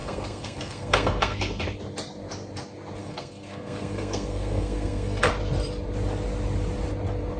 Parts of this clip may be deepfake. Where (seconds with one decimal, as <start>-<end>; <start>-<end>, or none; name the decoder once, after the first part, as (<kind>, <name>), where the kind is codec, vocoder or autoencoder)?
0.0-1.6 (codec, SNAC); 3.0-5.3